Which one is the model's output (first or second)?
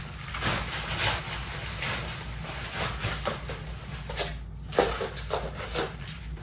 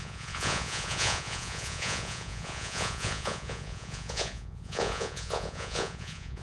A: second